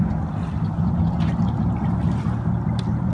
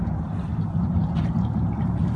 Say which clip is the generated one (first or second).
second